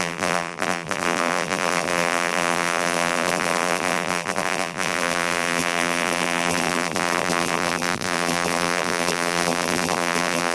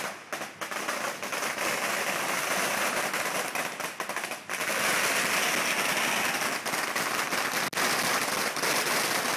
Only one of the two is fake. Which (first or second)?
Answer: first